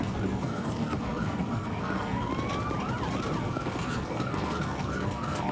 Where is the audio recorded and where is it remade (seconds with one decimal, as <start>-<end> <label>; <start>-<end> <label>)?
0.0-2.3 remade; 2.3-3.4 recorded; 3.4-5.5 remade